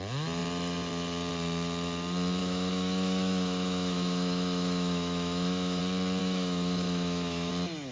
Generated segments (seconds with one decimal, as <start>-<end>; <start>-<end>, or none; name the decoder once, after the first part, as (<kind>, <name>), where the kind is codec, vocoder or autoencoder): 2.4-5.8 (autoencoder, DAC-VAE); 6.2-7.5